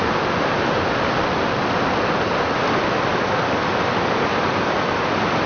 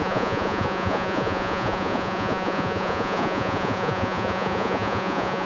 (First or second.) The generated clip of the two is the second